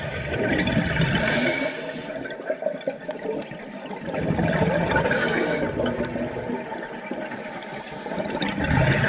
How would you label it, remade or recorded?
recorded